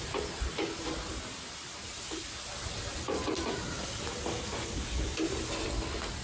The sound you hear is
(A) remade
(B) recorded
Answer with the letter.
B